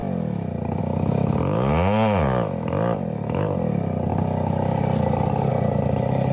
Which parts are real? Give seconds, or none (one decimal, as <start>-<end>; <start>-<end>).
0.0-6.3